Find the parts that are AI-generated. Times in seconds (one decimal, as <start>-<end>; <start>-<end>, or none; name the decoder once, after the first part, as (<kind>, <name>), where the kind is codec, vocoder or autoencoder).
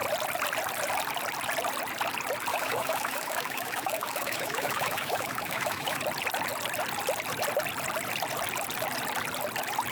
2.5-6.0 (autoencoder, DAC-VAE)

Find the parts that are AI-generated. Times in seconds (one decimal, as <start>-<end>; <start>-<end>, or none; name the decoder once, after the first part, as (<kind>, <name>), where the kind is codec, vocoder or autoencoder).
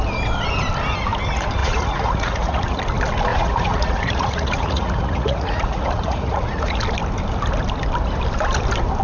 1.6-2.8 (vocoder, Vocos); 3.3-6.8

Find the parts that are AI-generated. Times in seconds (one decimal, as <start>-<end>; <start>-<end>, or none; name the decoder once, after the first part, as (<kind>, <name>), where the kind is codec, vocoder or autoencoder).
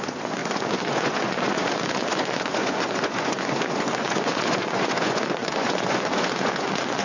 0.0-7.0 (vocoder, Vocos)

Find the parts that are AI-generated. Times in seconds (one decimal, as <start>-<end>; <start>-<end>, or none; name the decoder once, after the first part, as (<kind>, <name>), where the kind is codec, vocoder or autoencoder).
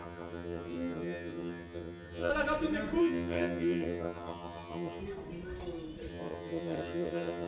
0.0-2.3 (vocoder, HiFi-GAN); 3.0-5.0; 6.1-7.5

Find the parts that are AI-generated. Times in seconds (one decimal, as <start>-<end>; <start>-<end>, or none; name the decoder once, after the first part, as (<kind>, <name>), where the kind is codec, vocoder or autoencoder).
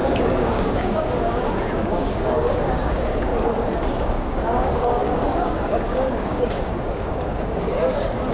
0.0-3.3 (codec, DAC); 3.9-8.3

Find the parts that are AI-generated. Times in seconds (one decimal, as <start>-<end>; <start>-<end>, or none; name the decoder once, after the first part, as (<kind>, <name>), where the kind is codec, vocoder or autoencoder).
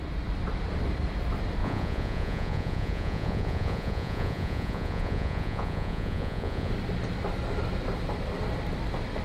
1.6-6.7 (vocoder, Vocos)